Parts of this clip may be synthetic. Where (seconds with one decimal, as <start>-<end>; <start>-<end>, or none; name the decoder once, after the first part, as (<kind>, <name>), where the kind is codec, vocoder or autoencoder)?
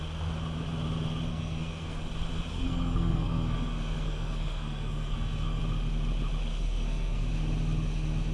1.3-2.0 (codec, SNAC); 2.5-5.6; 6.5-7.3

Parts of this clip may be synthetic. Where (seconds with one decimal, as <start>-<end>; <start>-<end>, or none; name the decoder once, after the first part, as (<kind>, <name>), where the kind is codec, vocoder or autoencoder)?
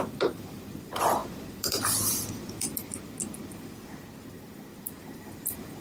0.0-2.9 (vocoder, BigVGAN v2); 4.3-5.8